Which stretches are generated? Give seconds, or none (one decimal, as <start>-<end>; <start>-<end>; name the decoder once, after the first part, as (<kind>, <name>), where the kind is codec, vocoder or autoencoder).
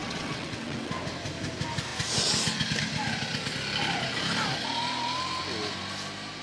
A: 0.0-0.9 (vocoder, WaveNeXt)